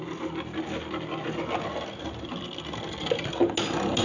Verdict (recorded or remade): recorded